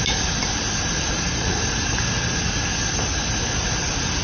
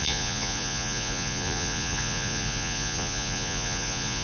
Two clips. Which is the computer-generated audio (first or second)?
second